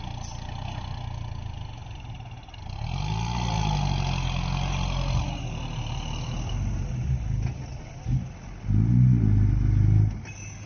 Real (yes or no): yes